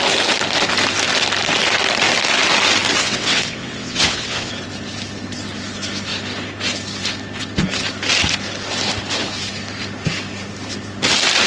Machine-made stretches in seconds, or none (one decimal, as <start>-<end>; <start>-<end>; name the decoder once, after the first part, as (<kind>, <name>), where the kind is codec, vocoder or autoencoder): 3.0-4.5 (vocoder, WaveNeXt)